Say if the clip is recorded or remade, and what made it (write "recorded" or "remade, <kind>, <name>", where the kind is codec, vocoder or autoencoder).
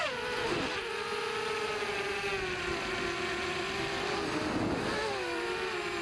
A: recorded